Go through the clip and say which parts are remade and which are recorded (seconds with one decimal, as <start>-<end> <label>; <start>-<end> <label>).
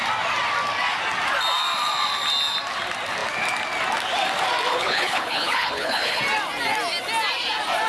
0.0-4.7 recorded; 4.7-6.2 remade; 6.2-7.9 recorded